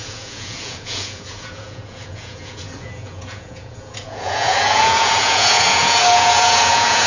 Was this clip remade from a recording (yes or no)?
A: yes